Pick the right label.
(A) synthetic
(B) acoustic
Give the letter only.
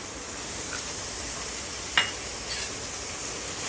B